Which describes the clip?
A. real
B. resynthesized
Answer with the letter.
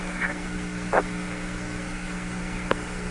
B